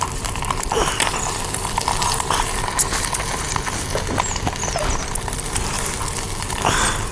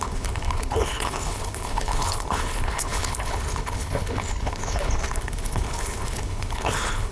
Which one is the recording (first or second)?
first